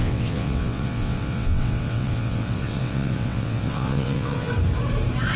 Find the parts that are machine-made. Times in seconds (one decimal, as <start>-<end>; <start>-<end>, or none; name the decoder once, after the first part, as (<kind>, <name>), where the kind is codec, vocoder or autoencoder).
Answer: 0.0-4.5 (vocoder, WaveNeXt)